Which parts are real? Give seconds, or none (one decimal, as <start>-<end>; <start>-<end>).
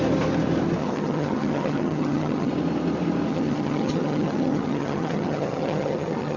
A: 0.0-0.8; 2.5-3.3